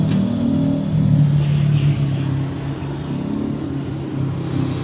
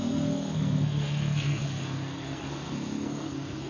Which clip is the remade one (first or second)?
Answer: second